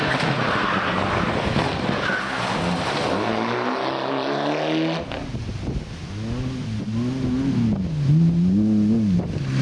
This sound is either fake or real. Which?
real